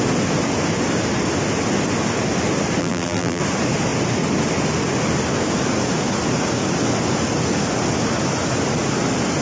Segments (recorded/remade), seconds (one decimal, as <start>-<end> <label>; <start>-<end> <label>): 0.0-2.8 recorded; 2.8-3.4 remade; 3.4-9.4 recorded